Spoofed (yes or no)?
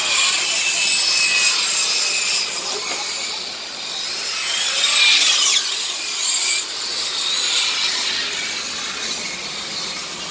no